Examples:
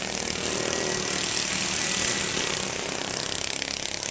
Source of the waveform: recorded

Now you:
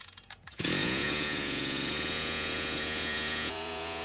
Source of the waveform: remade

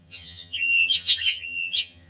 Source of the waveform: remade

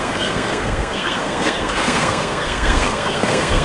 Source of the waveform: remade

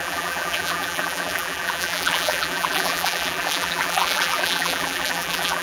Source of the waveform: remade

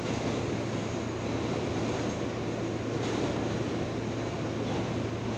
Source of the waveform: recorded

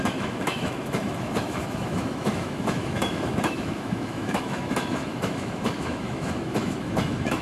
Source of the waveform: remade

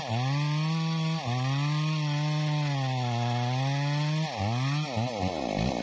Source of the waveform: recorded